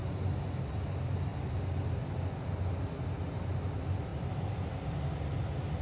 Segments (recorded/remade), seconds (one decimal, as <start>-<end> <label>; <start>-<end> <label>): 0.0-0.7 remade; 0.7-4.1 recorded; 4.1-4.9 remade; 4.9-5.8 recorded